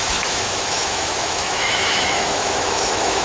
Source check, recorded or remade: remade